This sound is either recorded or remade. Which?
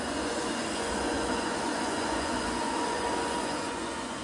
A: remade